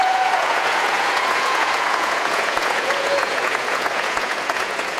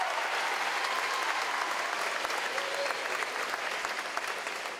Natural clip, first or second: second